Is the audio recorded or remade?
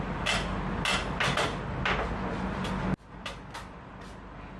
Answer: recorded